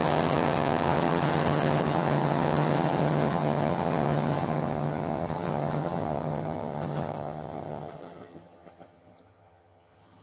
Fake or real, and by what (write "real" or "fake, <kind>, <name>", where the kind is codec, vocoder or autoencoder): fake, vocoder, HiFi-GAN